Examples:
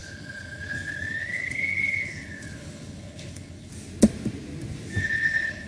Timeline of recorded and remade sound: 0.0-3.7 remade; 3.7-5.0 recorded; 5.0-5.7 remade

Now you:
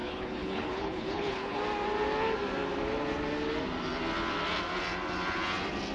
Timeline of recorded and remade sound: 0.0-1.6 remade; 1.6-5.9 recorded

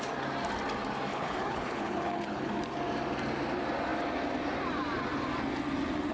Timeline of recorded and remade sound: 0.0-1.1 recorded; 1.1-2.5 remade; 2.5-6.1 recorded

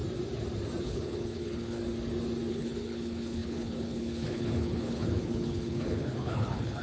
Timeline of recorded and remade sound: 0.0-0.8 recorded; 0.8-1.8 remade; 1.8-2.5 recorded; 2.5-6.8 remade

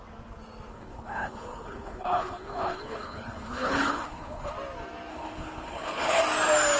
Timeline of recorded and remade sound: 0.0-0.7 recorded; 0.7-4.5 remade; 4.5-5.1 recorded; 5.1-6.2 remade; 6.2-6.8 recorded

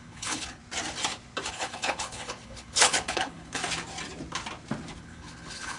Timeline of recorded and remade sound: 0.0-0.6 remade; 0.6-1.5 recorded; 1.5-3.6 remade; 3.6-5.0 recorded; 5.0-5.8 remade

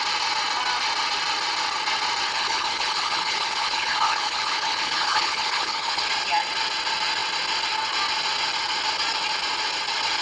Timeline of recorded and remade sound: 0.0-2.3 recorded; 2.3-6.0 remade; 6.0-10.2 recorded

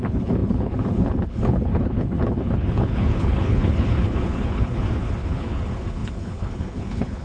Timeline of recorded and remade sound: 0.0-7.2 remade